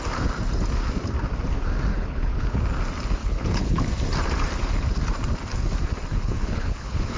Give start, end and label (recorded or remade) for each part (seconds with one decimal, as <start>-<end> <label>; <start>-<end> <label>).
0.0-1.9 recorded; 1.9-2.6 remade; 2.6-3.2 recorded; 3.2-3.8 remade; 3.8-6.1 recorded; 6.1-7.2 remade